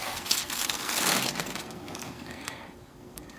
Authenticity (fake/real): fake